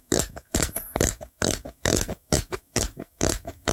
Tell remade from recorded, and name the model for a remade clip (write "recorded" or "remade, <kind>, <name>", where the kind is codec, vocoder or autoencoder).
remade, codec, SNAC